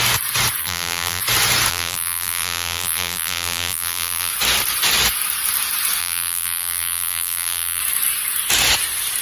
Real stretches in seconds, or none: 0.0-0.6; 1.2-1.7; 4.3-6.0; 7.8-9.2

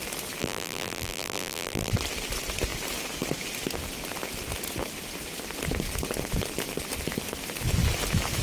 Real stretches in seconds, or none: 0.0-0.4; 1.9-8.4

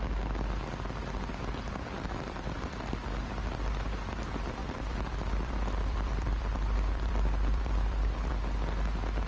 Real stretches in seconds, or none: 0.0-4.6; 8.3-9.3